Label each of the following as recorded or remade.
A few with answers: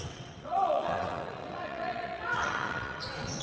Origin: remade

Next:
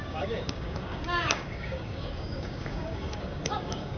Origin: remade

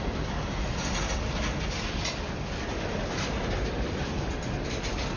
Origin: recorded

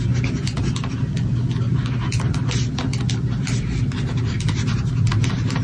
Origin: recorded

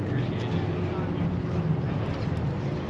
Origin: recorded